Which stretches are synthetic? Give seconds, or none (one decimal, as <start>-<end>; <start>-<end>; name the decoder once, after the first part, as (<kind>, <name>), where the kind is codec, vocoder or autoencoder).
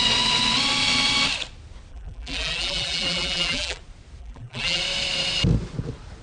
1.9-3.8 (vocoder, BigVGAN v2); 4.2-4.8